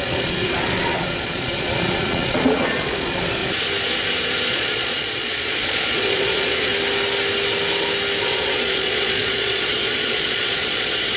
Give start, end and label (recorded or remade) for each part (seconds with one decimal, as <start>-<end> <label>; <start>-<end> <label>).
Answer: 0.0-3.4 remade; 3.4-4.5 recorded; 4.5-6.7 remade; 6.7-8.2 recorded; 8.2-11.2 remade